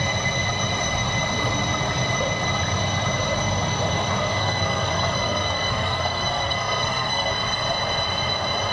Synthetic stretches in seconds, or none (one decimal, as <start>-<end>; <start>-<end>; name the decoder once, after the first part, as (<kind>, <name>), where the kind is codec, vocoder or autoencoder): 4.4-7.3 (codec, SNAC)